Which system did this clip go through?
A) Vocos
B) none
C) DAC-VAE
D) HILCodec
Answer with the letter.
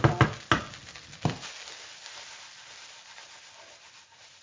B